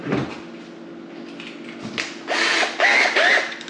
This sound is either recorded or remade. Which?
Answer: recorded